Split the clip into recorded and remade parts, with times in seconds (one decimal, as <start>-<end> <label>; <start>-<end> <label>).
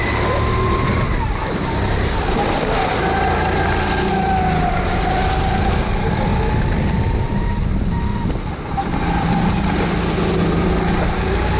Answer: 0.0-11.6 recorded